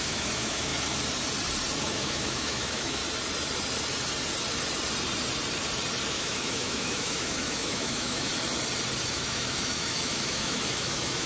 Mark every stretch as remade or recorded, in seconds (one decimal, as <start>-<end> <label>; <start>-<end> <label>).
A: 0.0-0.7 remade; 0.7-1.8 recorded; 1.8-3.0 remade; 3.0-6.1 recorded; 6.1-8.3 remade; 8.3-9.1 recorded; 9.1-11.3 remade